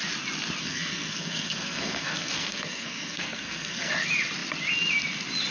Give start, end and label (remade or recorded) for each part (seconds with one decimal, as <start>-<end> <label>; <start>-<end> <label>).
0.0-0.6 recorded; 0.6-3.9 remade; 3.9-5.5 recorded